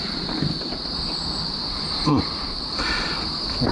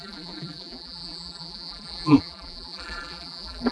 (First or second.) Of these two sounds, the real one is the first